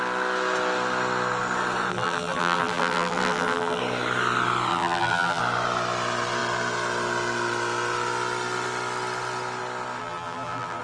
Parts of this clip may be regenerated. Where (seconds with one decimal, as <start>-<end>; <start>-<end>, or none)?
1.9-3.8; 4.7-5.4; 10.0-10.8